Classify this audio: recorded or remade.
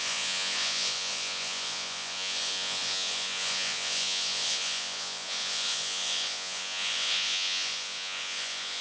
remade